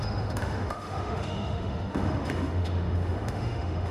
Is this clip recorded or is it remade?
remade